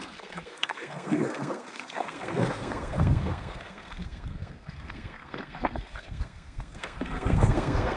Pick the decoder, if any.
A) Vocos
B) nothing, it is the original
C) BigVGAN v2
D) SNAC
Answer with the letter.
D